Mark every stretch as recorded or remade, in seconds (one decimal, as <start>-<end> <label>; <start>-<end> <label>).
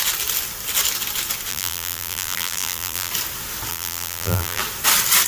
0.0-1.5 recorded; 1.5-3.1 remade; 3.1-3.7 recorded; 3.7-4.6 remade; 4.6-5.3 recorded